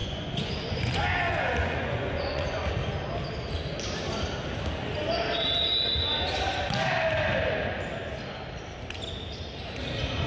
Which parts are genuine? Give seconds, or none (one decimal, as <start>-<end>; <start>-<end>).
2.7-10.3